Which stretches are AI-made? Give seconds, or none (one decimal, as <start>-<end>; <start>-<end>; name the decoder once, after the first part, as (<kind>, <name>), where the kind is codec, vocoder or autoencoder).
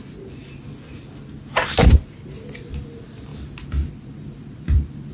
0.0-0.4 (vocoder, BigVGAN v2); 1.7-3.3; 3.9-5.1